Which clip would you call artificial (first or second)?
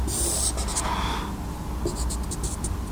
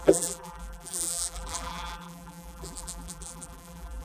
second